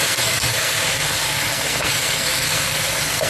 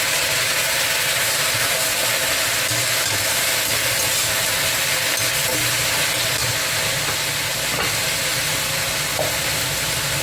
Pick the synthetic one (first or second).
first